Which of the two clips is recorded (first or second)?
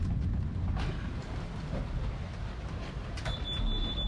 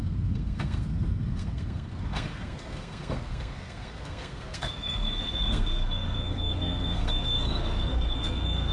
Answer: first